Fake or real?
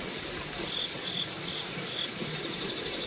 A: real